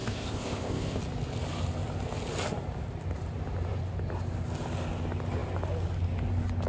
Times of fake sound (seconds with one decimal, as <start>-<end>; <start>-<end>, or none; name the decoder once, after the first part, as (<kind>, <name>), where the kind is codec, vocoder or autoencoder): 0.0-1.0 (codec, ZipCodec)